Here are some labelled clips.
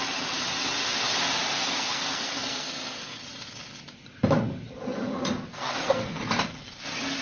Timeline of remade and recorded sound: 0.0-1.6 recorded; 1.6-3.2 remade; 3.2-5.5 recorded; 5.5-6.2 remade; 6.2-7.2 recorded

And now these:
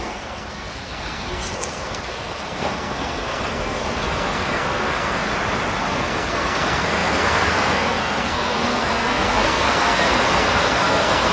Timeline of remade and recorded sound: 0.0-5.3 remade; 5.3-5.8 recorded; 5.8-11.3 remade

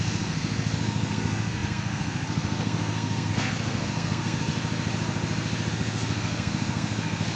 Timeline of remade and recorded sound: 0.0-4.5 remade; 4.5-5.7 recorded; 5.7-7.4 remade

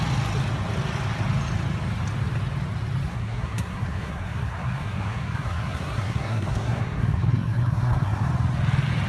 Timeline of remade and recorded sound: 0.0-3.1 recorded; 3.1-8.3 remade; 8.3-9.1 recorded

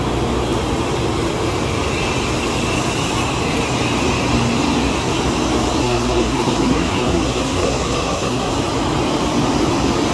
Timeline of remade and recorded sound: 0.0-5.8 recorded; 5.8-8.5 remade; 8.5-10.1 recorded

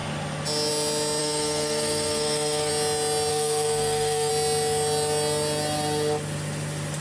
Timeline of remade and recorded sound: 0.0-1.2 recorded; 1.2-2.7 remade; 2.7-3.3 recorded; 3.3-4.3 remade; 4.3-7.0 recorded

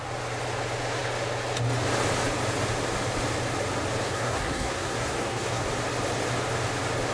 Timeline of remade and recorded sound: 0.0-4.0 recorded; 4.0-5.6 remade; 5.6-7.1 recorded

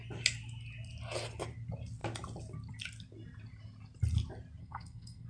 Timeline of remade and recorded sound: 0.0-4.6 recorded; 4.6-5.3 remade